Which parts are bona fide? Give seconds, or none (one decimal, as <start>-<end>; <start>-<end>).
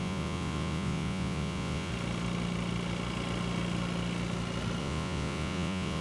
1.9-4.8